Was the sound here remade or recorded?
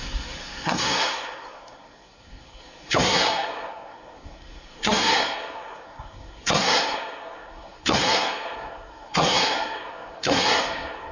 remade